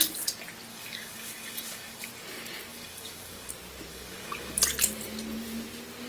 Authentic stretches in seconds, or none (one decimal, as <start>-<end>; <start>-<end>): 0.0-0.7; 2.1-2.7; 3.5-3.9; 4.6-6.1